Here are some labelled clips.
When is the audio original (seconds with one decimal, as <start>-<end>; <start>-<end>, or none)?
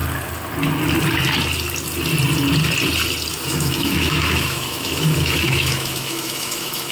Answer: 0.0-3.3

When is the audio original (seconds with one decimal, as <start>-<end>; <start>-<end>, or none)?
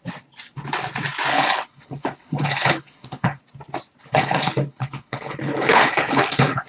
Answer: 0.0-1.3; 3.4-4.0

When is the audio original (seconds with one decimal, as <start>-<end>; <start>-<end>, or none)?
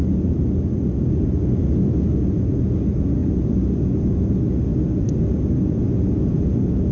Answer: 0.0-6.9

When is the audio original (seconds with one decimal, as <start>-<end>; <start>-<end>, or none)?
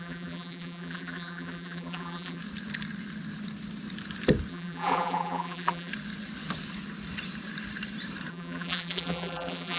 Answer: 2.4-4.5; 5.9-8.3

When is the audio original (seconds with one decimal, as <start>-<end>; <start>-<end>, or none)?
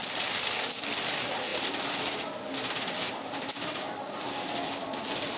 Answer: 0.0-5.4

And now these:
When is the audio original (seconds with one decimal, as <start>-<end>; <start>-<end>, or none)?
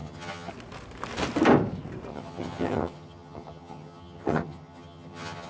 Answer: 0.5-2.1